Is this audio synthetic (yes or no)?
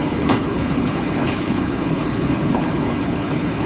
yes